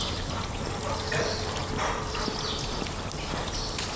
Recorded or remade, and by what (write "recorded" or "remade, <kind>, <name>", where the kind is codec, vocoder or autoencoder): recorded